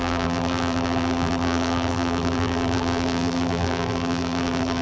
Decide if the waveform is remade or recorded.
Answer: remade